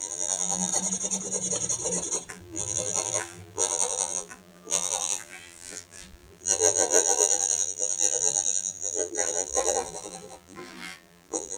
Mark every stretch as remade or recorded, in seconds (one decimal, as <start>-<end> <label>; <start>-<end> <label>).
0.0-0.7 remade; 0.7-2.3 recorded; 2.3-11.6 remade